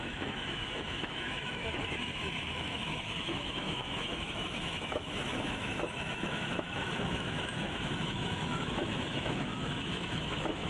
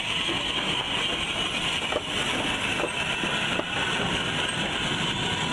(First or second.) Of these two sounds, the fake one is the first